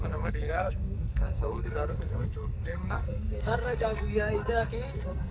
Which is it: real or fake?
fake